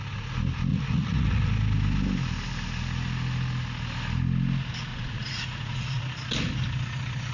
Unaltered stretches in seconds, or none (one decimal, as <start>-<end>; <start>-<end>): 0.0-0.7; 1.5-4.9; 6.0-7.3